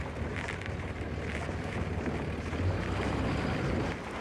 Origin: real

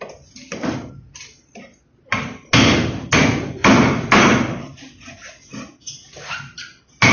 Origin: real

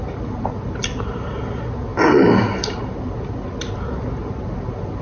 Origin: real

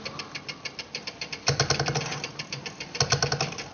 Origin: real